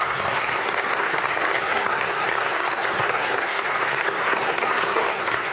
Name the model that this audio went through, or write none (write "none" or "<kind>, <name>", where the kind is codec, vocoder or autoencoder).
codec, SNAC